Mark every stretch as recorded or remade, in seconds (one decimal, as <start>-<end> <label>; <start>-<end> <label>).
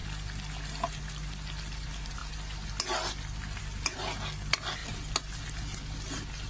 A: 0.0-6.5 recorded